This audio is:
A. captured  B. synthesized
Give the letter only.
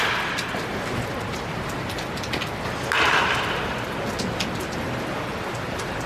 A